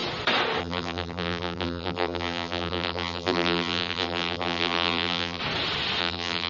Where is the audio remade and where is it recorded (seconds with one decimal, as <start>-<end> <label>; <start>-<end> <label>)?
0.0-0.6 recorded; 0.6-5.4 remade; 5.4-6.0 recorded; 6.0-6.5 remade